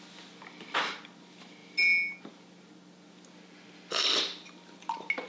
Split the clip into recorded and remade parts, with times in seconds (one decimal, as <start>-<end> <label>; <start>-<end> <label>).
0.0-5.3 recorded